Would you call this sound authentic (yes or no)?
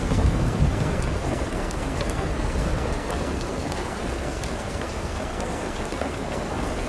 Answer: no